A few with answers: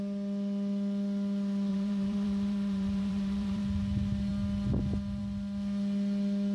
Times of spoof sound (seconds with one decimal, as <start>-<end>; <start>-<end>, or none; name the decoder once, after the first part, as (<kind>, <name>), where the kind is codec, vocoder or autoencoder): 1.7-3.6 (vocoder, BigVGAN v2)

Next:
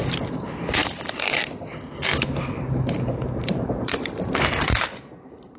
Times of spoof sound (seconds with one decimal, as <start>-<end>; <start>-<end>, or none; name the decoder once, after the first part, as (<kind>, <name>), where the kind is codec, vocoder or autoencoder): 0.8-1.4 (vocoder, BigVGAN v2); 2.1-5.6

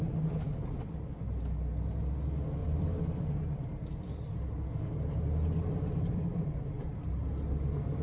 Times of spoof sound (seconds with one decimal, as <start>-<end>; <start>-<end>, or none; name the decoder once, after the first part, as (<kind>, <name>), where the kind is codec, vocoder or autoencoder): 2.6-7.0 (vocoder, BigVGAN v2)

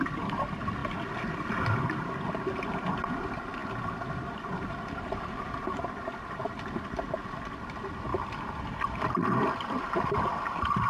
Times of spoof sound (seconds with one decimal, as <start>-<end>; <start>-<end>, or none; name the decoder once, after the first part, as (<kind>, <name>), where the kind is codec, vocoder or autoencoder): 3.6-6.8 (vocoder, BigVGAN v2); 8.1-9.4

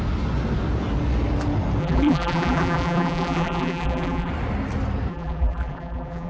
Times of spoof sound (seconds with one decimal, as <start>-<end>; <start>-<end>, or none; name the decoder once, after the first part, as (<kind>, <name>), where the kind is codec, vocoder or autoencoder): 1.8-4.3 (vocoder, BigVGAN v2); 5.1-6.3